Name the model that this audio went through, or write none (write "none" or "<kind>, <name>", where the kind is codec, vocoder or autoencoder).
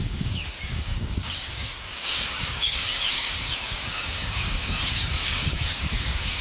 codec, DAC